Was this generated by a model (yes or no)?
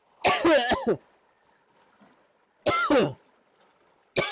no